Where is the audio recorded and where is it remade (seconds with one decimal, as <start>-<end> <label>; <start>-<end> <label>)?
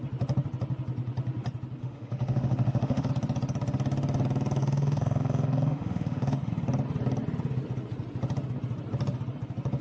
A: 0.0-1.8 recorded; 1.8-3.1 remade; 3.1-4.6 recorded; 4.6-6.5 remade; 6.5-9.8 recorded